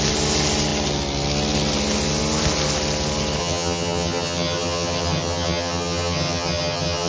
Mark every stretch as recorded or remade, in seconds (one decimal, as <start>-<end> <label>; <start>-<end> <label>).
0.0-3.4 recorded; 3.4-7.1 remade